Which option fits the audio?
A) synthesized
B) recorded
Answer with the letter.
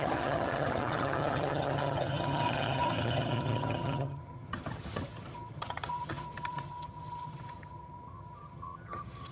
A